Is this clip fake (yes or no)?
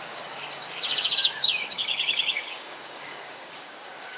yes